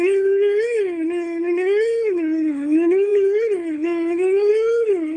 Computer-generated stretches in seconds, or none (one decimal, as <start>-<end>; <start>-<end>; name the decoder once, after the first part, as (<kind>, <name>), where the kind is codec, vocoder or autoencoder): 0.0-5.2 (codec, HILCodec)